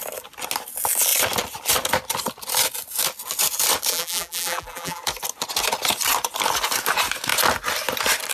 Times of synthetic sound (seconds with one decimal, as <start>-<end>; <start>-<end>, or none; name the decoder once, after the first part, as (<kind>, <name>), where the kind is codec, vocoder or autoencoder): 3.9-5.0 (vocoder, BigVGAN v2)

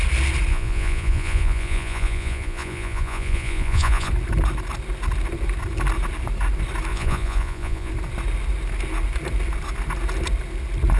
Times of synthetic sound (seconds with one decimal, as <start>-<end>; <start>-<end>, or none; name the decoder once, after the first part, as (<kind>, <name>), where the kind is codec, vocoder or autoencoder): 0.5-4.1 (vocoder, Vocos); 6.9-7.9

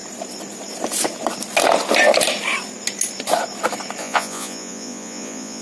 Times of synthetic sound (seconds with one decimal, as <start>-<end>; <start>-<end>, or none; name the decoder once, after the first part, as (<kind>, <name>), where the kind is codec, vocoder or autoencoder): 4.0-5.6 (vocoder, Vocos)

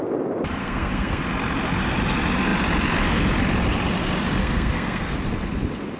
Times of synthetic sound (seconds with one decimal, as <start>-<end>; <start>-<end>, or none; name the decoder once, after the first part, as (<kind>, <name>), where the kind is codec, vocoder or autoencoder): 0.6-1.2 (codec, SNAC); 4.4-5.1